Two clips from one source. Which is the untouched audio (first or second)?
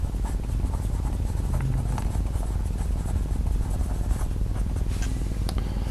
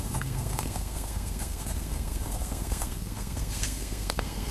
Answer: first